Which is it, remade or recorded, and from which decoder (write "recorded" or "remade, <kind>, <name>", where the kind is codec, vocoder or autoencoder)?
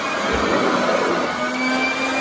recorded